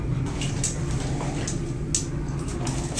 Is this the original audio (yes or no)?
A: yes